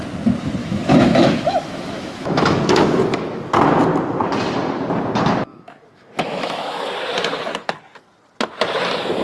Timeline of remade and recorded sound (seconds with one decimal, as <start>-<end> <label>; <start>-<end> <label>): 0.0-0.6 recorded; 0.6-2.6 remade; 2.6-5.5 recorded; 5.5-6.8 remade; 6.8-9.2 recorded